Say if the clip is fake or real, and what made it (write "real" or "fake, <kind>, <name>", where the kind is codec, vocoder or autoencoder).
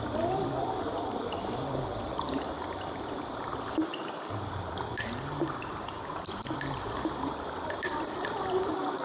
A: fake, vocoder, BigVGAN v2